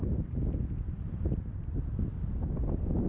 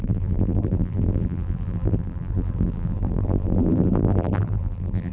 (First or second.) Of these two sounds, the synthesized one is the second